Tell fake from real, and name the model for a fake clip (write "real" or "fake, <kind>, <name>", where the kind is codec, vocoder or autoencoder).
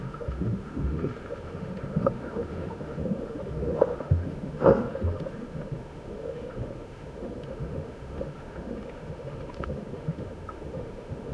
fake, autoencoder, DAC-VAE